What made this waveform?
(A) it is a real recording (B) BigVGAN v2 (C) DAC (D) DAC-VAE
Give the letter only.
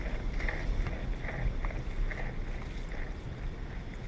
A